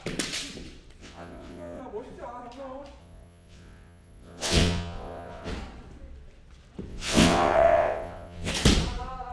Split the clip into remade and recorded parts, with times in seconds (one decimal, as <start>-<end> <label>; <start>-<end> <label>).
0.0-1.0 recorded; 1.0-1.8 remade; 1.8-3.0 recorded; 3.0-5.5 remade; 5.5-6.9 recorded; 6.9-8.5 remade; 8.5-9.3 recorded